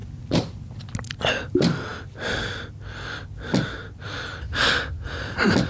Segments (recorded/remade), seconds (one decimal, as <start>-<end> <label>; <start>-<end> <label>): 0.0-5.7 recorded